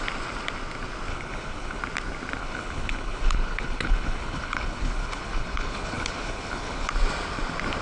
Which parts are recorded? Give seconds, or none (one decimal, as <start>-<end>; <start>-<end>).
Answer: 0.0-1.1; 1.8-2.4; 6.9-7.8